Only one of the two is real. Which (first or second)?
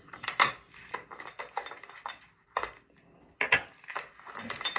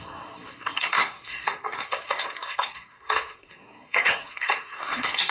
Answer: first